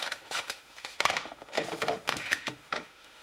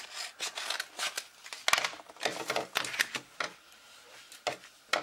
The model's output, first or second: first